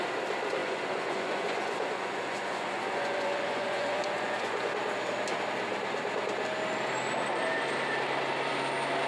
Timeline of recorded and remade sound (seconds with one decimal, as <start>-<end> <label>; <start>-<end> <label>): 0.0-0.6 recorded; 0.6-4.7 remade; 4.7-9.1 recorded